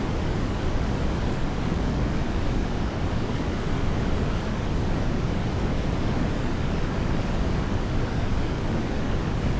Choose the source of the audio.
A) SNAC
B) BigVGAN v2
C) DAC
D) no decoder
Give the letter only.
C